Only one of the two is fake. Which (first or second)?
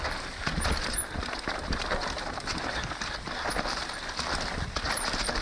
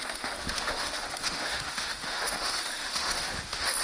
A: second